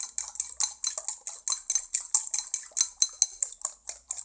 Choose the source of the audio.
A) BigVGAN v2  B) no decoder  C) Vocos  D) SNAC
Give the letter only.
B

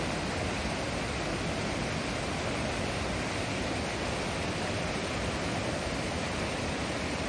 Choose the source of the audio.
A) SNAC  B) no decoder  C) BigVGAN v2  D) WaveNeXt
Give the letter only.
B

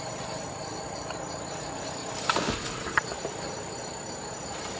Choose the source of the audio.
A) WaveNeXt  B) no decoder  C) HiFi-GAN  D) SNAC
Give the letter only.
B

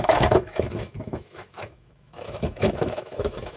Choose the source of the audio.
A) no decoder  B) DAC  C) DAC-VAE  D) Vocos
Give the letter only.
C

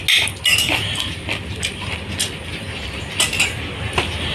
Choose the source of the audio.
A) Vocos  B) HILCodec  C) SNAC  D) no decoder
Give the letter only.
D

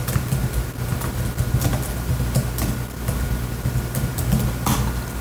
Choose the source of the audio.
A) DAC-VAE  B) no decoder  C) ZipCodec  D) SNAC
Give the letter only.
B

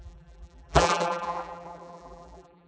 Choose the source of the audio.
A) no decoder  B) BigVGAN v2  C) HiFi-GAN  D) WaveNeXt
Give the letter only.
B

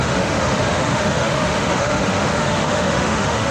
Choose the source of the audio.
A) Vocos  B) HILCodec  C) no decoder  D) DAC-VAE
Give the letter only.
D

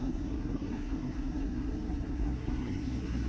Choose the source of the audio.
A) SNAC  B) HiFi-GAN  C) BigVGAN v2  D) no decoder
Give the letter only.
A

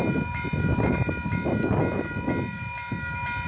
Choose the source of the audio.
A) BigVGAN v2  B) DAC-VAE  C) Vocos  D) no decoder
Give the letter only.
D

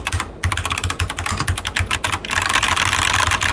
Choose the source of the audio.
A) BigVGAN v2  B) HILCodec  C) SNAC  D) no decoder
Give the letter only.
D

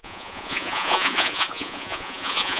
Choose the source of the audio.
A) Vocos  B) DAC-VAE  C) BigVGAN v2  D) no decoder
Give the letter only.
A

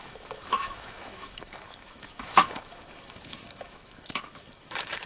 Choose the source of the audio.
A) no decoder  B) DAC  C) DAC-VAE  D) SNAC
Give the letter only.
C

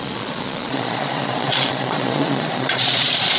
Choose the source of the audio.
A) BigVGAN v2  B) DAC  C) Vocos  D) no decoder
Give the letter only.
C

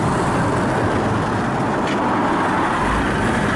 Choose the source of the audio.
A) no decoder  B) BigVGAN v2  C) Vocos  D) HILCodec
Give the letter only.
A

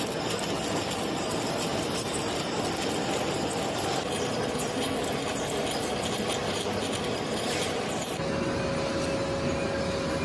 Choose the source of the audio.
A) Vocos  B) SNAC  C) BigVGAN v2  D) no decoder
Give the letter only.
D